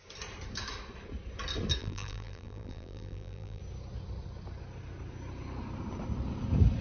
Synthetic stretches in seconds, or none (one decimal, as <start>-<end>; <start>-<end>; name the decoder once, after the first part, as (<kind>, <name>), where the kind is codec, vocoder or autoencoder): 1.8-3.6 (vocoder, BigVGAN v2)